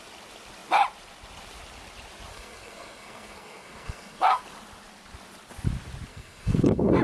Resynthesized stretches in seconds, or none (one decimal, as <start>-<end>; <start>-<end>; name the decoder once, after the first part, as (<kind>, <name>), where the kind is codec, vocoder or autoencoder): 2.3-4.4 (codec, SNAC); 6.1-7.0